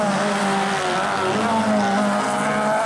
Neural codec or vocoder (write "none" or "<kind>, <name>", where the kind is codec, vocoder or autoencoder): none